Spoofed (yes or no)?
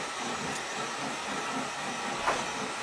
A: no